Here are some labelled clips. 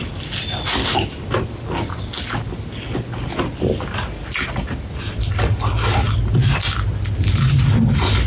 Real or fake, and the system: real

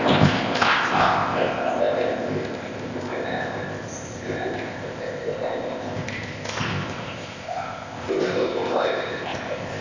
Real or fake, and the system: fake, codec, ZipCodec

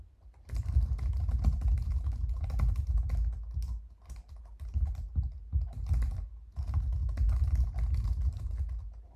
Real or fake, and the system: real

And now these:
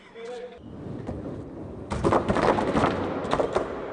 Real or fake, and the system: real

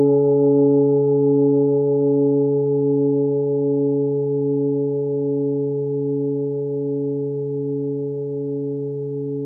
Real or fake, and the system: real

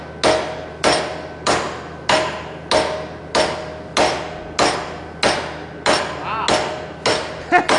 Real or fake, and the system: real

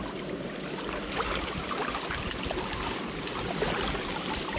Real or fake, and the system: real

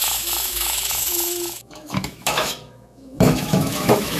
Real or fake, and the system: fake, autoencoder, DAC-VAE